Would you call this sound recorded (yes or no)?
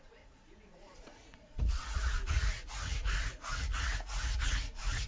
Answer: no